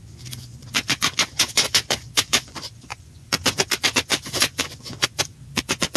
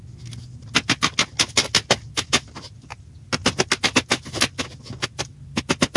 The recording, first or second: second